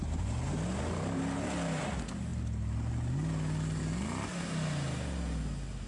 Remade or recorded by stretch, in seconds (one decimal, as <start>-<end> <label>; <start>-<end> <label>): 0.0-5.9 recorded